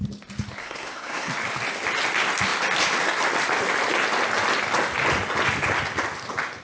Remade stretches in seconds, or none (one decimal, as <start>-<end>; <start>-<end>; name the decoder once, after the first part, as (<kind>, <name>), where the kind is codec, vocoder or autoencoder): 0.6-1.3 (codec, SNAC)